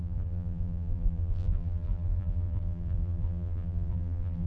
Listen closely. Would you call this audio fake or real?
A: fake